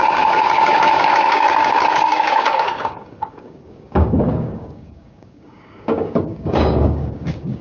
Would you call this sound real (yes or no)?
no